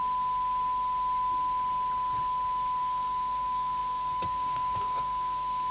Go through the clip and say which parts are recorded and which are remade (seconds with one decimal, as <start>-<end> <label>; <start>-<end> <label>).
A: 0.0-2.8 recorded; 2.8-5.7 remade